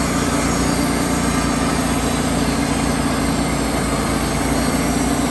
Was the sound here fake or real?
real